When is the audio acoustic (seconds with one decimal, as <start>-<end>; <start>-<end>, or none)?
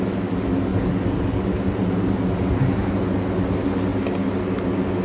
0.0-5.0